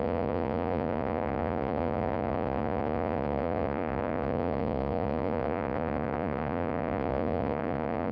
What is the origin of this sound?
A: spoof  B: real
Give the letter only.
A